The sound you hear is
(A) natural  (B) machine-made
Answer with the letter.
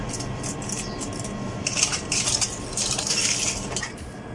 B